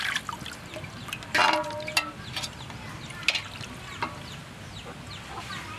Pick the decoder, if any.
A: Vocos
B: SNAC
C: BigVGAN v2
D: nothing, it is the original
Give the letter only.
D